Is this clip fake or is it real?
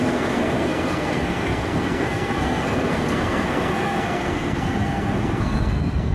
fake